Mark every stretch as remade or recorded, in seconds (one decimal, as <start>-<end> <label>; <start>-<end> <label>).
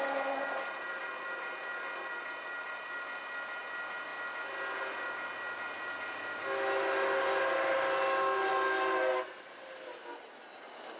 0.0-11.0 recorded